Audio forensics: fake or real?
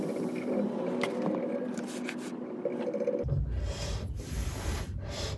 real